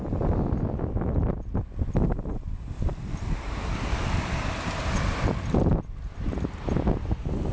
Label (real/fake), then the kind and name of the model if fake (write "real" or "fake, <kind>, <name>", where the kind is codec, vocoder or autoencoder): real